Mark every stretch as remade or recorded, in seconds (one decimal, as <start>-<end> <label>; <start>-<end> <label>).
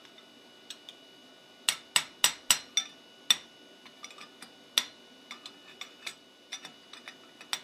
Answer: 0.0-6.1 recorded; 6.1-6.6 remade; 6.6-7.6 recorded